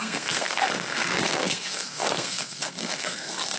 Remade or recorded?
remade